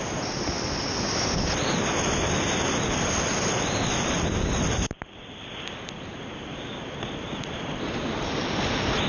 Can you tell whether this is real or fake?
real